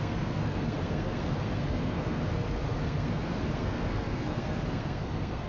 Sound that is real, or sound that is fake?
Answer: fake